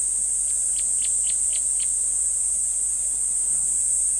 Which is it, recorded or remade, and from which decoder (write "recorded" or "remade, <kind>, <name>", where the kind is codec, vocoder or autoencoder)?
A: recorded